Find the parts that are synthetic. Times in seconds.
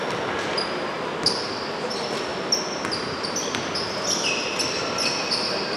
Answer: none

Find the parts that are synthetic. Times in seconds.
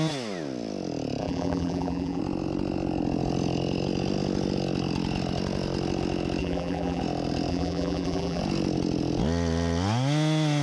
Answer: 1.2-2.2; 6.4-7.0; 7.5-8.4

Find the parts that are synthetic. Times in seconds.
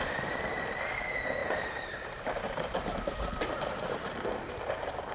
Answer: 1.4-3.8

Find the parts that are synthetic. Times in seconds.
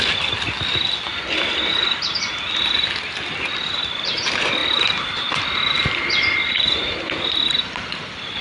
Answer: none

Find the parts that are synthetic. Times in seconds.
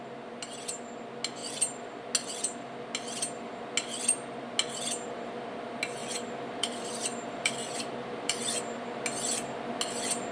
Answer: 1.4-1.9; 6.0-8.4